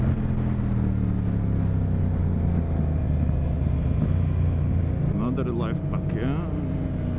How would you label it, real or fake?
real